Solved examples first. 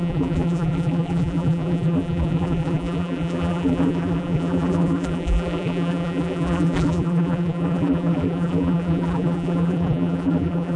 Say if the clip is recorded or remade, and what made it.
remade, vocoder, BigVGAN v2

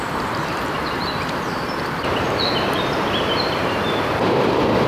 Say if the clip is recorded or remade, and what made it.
remade, vocoder, BigVGAN v2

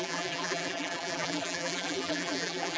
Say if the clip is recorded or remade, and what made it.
remade, vocoder, BigVGAN v2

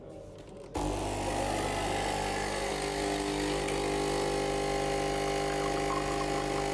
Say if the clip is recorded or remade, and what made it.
recorded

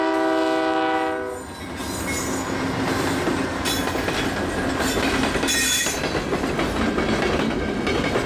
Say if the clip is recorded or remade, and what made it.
recorded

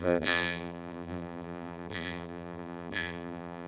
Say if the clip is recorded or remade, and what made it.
remade, vocoder, BigVGAN v2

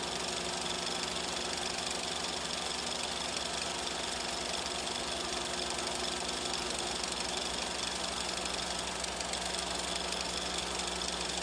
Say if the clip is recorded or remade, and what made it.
recorded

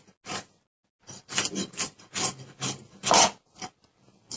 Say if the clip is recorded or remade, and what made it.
recorded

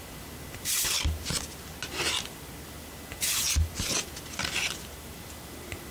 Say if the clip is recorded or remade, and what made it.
recorded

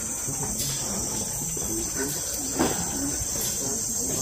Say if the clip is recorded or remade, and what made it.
remade, vocoder, BigVGAN v2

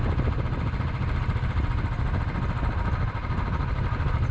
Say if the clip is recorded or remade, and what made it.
recorded